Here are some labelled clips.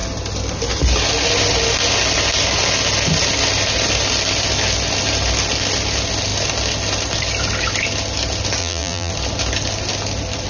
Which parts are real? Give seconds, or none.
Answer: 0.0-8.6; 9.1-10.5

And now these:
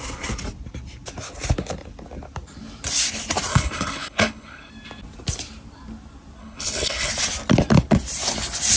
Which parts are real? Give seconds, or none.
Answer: 0.0-3.5; 4.7-6.4; 7.1-8.8

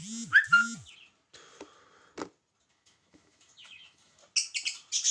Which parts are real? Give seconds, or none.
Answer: 0.0-2.7; 4.2-5.1

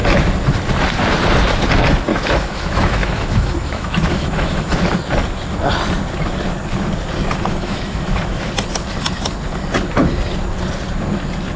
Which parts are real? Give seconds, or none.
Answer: 0.0-2.1; 4.8-7.5; 8.5-11.6

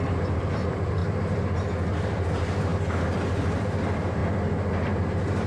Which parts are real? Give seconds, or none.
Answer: 1.0-1.9; 2.7-3.3; 4.2-4.9